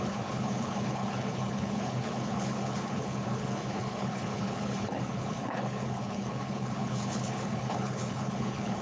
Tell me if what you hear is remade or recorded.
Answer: remade